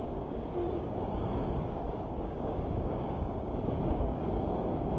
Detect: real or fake fake